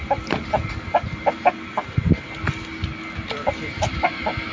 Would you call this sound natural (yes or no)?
yes